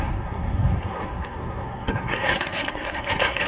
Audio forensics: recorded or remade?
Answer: remade